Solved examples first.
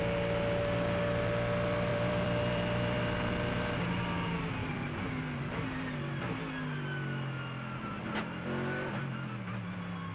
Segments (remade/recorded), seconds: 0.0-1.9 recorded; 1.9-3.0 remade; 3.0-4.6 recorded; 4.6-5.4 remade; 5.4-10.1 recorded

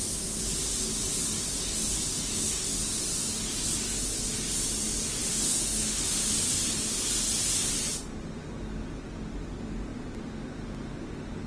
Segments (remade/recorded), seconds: 0.0-5.2 recorded; 5.2-6.3 remade; 6.3-11.5 recorded

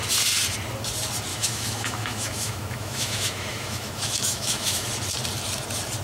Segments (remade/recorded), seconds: 0.0-1.3 recorded; 1.3-4.9 remade; 4.9-6.0 recorded

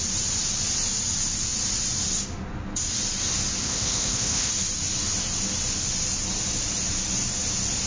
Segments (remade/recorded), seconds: 0.0-3.6 recorded; 3.6-4.5 remade; 4.5-7.9 recorded